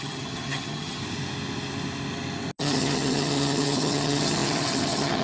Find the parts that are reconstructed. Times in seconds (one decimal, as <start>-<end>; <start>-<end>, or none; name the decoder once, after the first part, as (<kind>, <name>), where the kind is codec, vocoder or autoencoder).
0.0-1.0 (vocoder, HiFi-GAN); 2.6-5.2